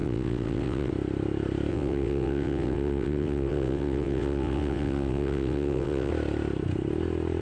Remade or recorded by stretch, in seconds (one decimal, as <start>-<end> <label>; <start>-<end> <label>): 0.0-0.9 remade; 0.9-1.7 recorded; 1.7-6.1 remade; 6.1-7.4 recorded